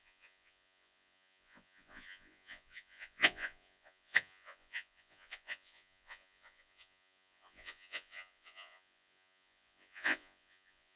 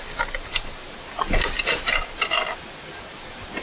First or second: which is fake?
first